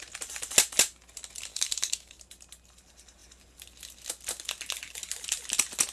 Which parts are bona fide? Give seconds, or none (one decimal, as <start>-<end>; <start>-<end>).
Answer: 0.0-1.5; 2.2-5.9